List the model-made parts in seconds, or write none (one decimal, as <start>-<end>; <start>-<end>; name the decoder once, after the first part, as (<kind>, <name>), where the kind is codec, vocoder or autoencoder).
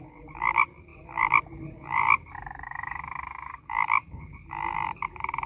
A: 0.0-5.5 (vocoder, BigVGAN v2)